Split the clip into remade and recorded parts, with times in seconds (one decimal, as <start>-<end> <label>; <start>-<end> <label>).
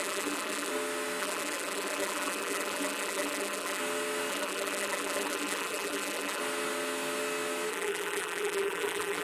0.0-0.7 remade; 0.7-1.2 recorded; 1.2-3.8 remade; 3.8-4.3 recorded; 4.3-6.4 remade; 6.4-7.7 recorded; 7.7-9.2 remade